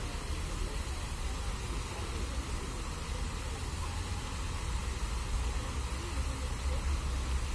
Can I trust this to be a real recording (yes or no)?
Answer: yes